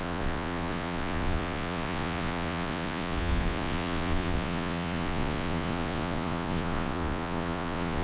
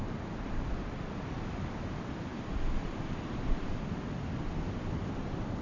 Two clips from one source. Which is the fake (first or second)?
first